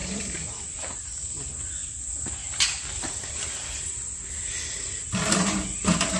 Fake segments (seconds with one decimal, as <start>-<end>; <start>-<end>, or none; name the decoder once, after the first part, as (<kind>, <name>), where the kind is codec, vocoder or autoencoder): 0.0-3.6 (vocoder, BigVGAN v2); 4.9-6.2